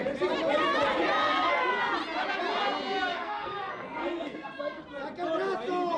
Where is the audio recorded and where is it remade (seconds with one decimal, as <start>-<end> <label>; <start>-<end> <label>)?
0.0-1.2 recorded; 1.2-1.7 remade; 1.7-3.1 recorded; 3.1-4.8 remade; 4.8-6.0 recorded